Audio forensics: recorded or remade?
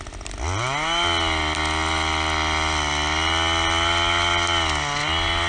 recorded